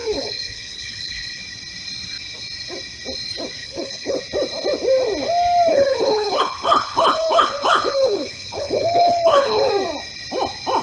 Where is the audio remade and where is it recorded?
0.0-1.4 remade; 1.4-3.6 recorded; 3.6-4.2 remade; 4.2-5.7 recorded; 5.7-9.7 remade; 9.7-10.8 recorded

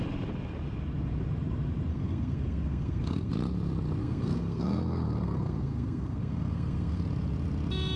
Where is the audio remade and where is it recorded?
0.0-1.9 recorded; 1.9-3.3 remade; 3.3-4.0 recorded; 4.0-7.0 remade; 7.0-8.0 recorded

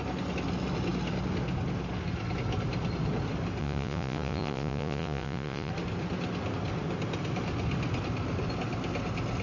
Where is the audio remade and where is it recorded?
0.0-3.6 recorded; 3.6-5.7 remade; 5.7-9.4 recorded

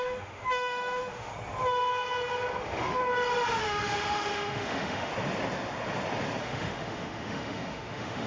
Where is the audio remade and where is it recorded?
0.0-1.3 remade; 1.3-2.6 recorded; 2.6-3.0 remade; 3.0-3.6 recorded; 3.6-5.1 remade; 5.1-6.4 recorded; 6.4-8.3 remade

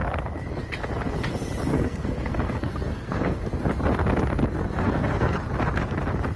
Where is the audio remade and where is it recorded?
0.0-1.7 recorded; 1.7-3.4 remade; 3.4-4.6 recorded; 4.6-5.4 remade; 5.4-6.4 recorded

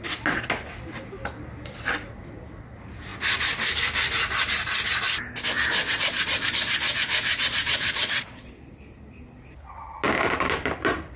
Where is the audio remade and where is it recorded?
0.0-5.8 recorded; 5.8-6.5 remade; 6.5-7.3 recorded; 7.3-8.5 remade; 8.5-11.2 recorded

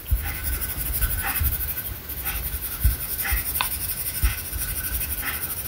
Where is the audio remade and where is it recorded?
0.0-5.7 recorded